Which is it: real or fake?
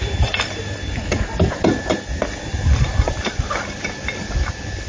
real